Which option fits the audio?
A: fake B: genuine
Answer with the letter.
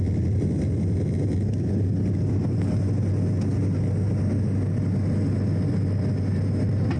B